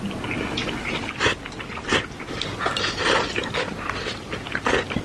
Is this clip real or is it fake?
real